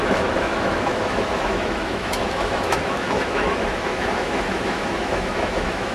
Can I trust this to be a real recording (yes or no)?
no